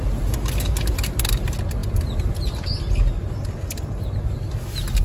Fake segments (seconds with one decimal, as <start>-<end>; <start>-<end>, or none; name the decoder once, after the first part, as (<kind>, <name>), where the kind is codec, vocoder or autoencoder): none